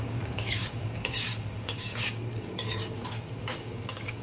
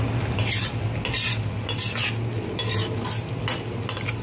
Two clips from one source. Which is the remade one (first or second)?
first